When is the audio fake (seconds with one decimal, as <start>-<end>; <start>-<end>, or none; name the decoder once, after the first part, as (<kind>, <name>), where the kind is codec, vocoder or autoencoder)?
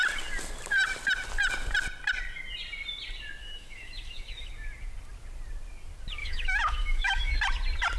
3.4-4.5 (autoencoder, DAC-VAE); 6.2-7.4